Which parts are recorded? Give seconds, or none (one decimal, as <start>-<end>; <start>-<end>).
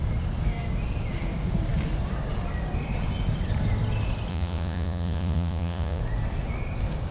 0.0-4.3; 6.0-7.1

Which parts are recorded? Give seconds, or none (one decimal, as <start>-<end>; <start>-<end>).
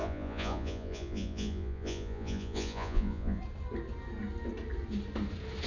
3.4-5.7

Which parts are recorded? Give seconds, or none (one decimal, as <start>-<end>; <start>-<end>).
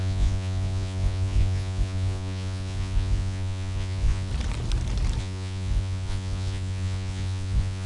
4.3-5.2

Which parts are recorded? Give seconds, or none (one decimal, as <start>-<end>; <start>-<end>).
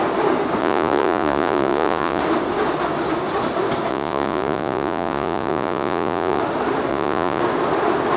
0.0-0.6; 2.2-3.9; 6.4-6.9; 7.4-8.2